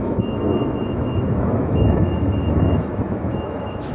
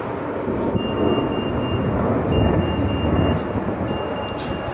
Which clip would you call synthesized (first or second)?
first